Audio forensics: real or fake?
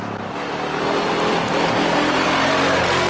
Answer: real